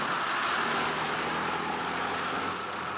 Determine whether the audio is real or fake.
real